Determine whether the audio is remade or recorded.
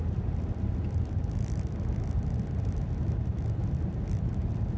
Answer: recorded